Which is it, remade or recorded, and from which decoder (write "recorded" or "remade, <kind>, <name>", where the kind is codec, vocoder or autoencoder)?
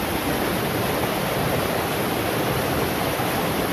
recorded